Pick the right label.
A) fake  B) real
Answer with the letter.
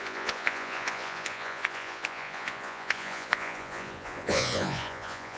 A